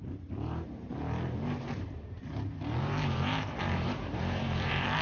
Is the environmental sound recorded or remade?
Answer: remade